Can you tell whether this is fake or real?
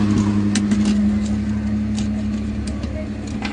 real